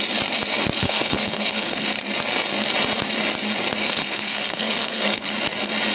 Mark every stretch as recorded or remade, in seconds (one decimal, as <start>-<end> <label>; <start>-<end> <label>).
0.0-0.8 recorded; 0.8-1.9 remade; 1.9-3.8 recorded; 3.8-5.3 remade; 5.3-5.9 recorded